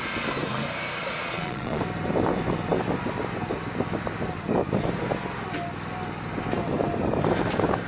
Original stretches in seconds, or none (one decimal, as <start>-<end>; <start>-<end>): 0.0-1.0; 1.8-7.9